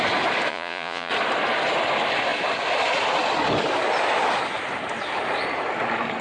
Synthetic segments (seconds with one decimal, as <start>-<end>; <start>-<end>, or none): 0.5-1.1

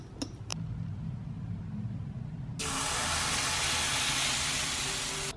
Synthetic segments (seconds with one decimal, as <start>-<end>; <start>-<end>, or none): none